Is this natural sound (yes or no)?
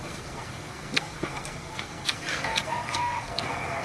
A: no